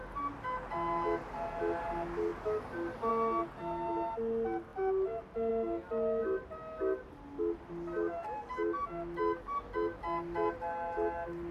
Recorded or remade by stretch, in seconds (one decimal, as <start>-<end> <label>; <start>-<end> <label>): 0.0-11.5 recorded